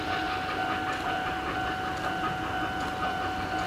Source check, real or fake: real